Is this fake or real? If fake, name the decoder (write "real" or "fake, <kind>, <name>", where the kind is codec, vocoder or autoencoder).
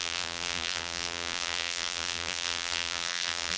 fake, vocoder, BigVGAN v2